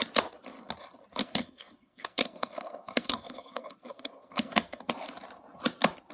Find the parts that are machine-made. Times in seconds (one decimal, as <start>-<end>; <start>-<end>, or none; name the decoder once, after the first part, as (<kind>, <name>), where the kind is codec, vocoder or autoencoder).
1.2-4.9 (codec, SNAC)

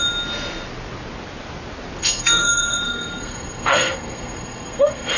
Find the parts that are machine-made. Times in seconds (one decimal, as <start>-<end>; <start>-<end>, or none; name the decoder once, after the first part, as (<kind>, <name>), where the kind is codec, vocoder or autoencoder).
2.0-5.2 (codec, SNAC)

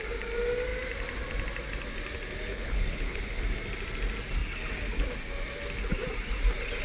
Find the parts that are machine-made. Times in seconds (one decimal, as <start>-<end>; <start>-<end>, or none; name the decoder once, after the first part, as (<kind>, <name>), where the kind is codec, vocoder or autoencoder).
2.5-3.4 (codec, HILCodec)